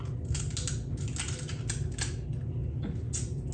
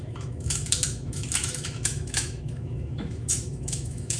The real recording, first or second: first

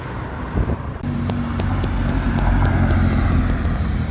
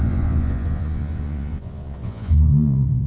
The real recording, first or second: first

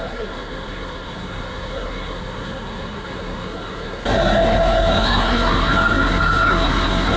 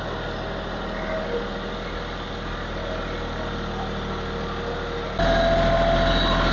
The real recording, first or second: second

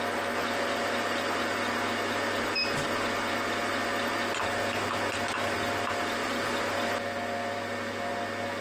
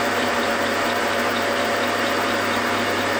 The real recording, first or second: first